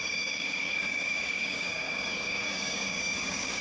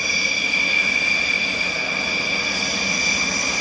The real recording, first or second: second